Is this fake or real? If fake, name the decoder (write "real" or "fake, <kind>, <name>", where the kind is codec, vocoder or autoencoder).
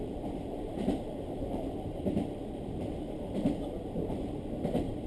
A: fake, vocoder, BigVGAN v2